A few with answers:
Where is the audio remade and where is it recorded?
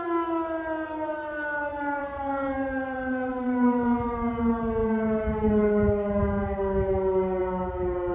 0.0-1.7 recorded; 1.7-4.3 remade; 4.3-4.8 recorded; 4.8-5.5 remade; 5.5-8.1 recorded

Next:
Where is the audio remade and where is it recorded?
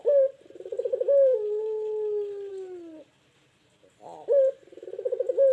0.0-5.5 recorded